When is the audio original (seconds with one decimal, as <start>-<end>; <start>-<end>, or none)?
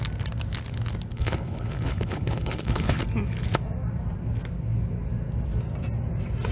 0.0-1.1; 3.0-6.5